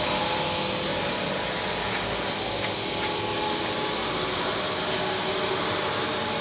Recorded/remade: recorded